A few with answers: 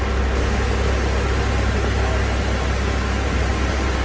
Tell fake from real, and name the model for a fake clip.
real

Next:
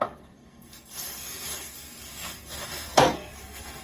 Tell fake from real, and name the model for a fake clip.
fake, codec, SNAC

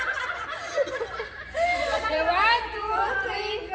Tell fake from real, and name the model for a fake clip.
fake, vocoder, BigVGAN v2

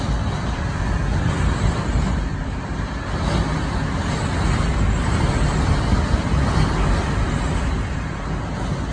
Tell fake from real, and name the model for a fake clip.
real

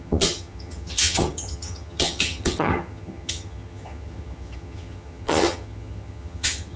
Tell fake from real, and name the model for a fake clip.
fake, vocoder, HiFi-GAN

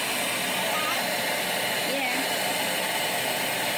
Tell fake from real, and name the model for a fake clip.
real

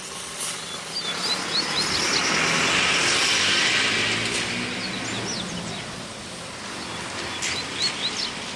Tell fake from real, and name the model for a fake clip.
real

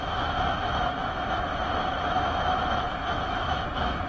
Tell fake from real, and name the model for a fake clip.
fake, autoencoder, DAC-VAE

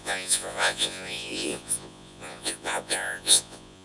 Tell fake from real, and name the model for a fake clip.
fake, vocoder, Vocos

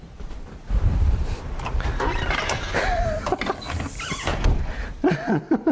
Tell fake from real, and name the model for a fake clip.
fake, vocoder, BigVGAN v2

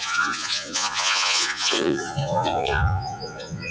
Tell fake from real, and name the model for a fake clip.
fake, vocoder, Vocos